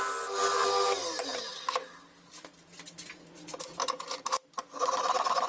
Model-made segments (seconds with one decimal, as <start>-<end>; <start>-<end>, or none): none